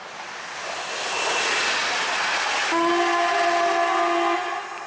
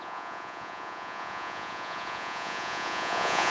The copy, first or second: second